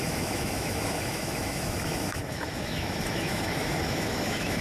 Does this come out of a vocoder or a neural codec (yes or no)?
yes